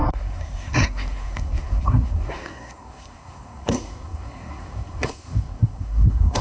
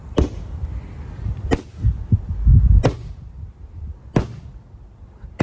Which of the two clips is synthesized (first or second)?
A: first